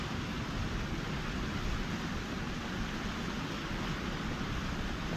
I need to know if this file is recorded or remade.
recorded